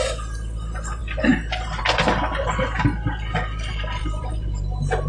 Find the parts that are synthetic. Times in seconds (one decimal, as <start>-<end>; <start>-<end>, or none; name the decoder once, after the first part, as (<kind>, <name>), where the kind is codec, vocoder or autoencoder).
4.0-5.1 (vocoder, BigVGAN v2)